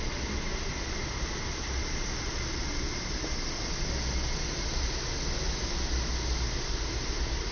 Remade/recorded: recorded